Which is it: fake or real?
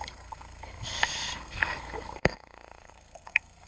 fake